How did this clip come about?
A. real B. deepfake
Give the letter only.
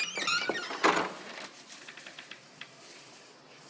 A